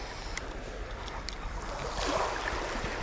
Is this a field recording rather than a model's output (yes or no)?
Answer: yes